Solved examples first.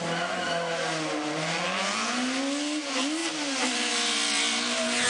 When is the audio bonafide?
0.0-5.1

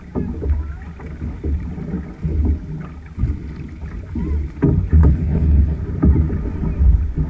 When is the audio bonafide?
0.0-5.0; 5.8-7.3

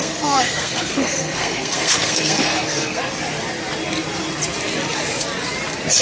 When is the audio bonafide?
3.0-6.0

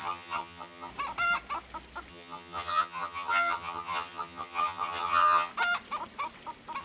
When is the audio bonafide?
0.9-2.1; 5.5-6.8

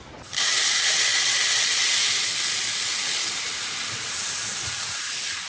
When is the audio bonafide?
0.0-5.5

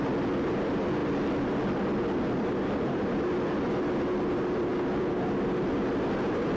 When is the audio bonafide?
0.0-6.6